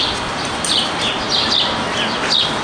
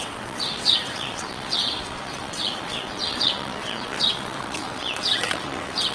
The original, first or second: first